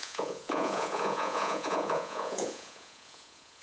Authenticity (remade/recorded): remade